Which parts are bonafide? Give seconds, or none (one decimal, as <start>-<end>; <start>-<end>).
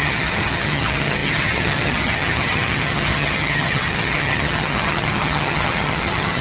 none